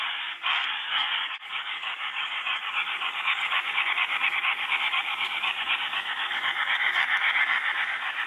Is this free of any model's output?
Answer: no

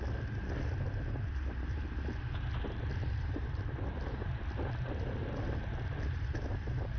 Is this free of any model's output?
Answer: yes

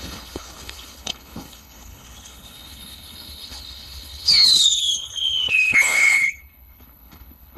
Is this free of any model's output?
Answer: no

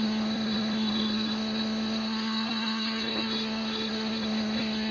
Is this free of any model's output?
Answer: no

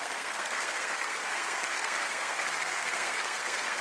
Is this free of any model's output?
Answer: no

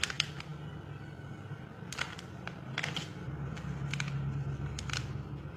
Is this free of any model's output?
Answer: yes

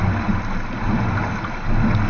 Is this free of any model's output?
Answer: yes